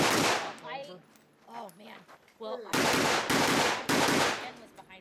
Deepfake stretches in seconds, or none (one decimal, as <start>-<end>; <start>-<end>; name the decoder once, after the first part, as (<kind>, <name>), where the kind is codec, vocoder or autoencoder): none